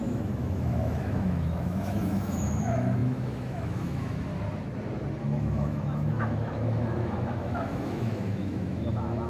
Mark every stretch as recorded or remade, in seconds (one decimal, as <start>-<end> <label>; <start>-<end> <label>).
0.0-4.3 remade; 4.3-5.2 recorded; 5.2-9.3 remade